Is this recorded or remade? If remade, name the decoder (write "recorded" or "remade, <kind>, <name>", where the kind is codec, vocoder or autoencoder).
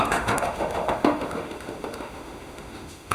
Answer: remade, autoencoder, DAC-VAE